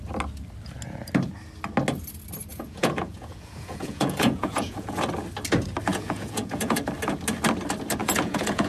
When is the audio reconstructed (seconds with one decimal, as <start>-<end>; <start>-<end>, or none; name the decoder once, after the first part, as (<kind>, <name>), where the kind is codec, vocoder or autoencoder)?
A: 2.5-5.0 (vocoder, Vocos); 5.9-6.8; 8.0-8.7